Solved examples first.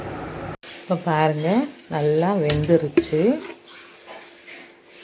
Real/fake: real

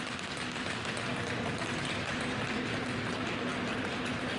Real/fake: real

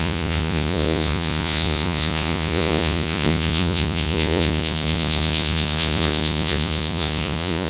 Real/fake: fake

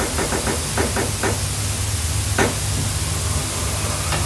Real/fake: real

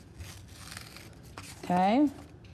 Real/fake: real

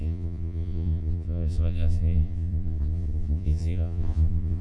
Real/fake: fake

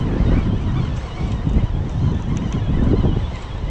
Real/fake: real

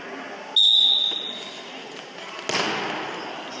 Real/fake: real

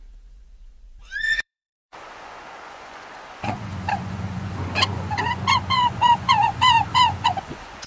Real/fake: fake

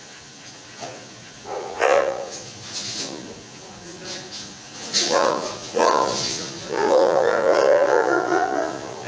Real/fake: fake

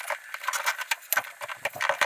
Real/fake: real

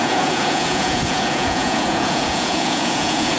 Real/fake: fake